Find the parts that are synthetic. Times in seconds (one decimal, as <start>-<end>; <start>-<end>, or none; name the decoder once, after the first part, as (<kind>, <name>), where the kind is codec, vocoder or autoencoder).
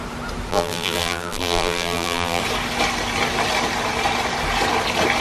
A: 0.5-2.4 (vocoder, BigVGAN v2)